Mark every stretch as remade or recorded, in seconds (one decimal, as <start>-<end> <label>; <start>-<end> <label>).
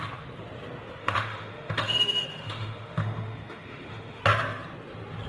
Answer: 0.0-1.0 recorded; 1.0-4.2 remade; 4.2-5.3 recorded